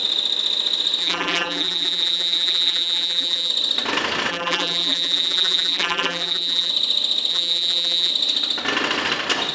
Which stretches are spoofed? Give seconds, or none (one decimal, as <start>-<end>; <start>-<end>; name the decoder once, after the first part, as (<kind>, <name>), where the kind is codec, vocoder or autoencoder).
1.0-3.5 (vocoder, BigVGAN v2); 4.3-6.7; 7.3-8.1